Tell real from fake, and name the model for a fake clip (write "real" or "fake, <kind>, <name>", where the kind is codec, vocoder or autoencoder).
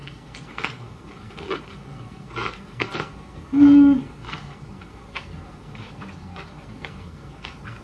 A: fake, codec, SNAC